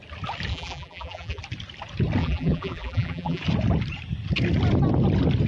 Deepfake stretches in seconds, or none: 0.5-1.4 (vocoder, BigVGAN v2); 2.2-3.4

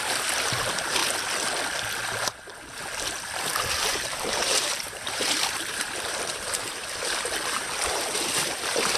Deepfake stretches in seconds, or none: 0.0-1.0 (vocoder, BigVGAN v2); 3.2-9.0